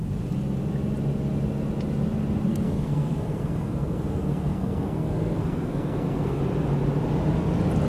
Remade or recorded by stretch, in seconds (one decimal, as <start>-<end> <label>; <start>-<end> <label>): 0.0-2.5 recorded; 2.5-6.4 remade; 6.4-7.9 recorded